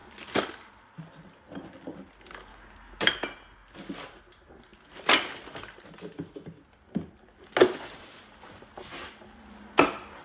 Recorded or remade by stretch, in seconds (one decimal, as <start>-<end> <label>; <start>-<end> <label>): 0.0-2.5 recorded; 2.5-3.1 remade; 3.1-10.2 recorded